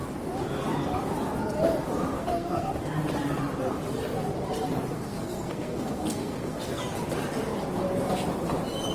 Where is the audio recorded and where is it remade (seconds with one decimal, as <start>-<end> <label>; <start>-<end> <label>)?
0.0-2.1 recorded; 2.1-2.7 remade; 2.7-4.9 recorded; 4.9-6.8 remade; 6.8-8.9 recorded